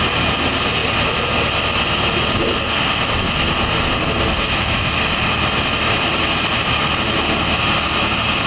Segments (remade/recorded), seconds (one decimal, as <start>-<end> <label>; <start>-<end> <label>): 0.0-8.5 recorded